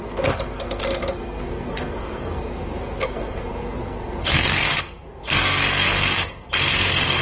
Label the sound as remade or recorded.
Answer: remade